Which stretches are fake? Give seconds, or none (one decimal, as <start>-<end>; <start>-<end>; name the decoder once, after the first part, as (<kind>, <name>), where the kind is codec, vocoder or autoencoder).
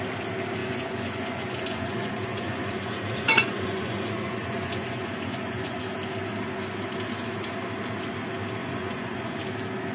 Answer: 0.6-5.8 (vocoder, Vocos); 8.6-9.4